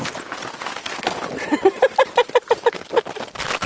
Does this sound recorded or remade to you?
recorded